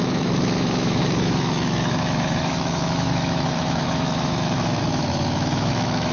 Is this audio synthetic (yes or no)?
yes